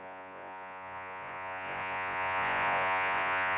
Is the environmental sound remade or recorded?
remade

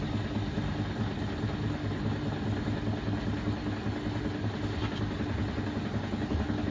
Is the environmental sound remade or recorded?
recorded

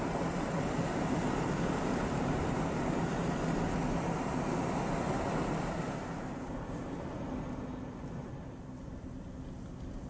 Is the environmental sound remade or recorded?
recorded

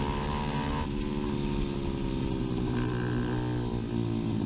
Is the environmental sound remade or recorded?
recorded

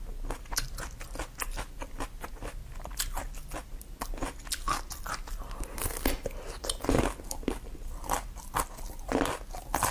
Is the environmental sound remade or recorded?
recorded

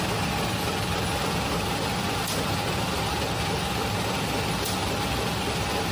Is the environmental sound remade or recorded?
recorded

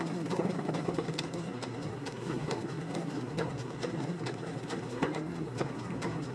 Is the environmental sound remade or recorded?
remade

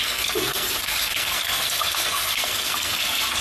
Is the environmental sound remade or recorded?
remade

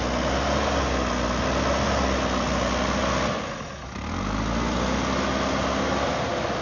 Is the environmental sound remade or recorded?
recorded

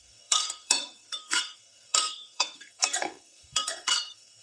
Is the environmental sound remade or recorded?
remade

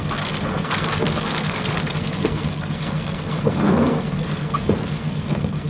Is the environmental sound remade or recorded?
remade